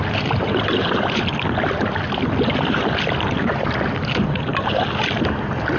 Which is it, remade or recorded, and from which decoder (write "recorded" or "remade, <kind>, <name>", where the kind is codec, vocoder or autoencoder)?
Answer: recorded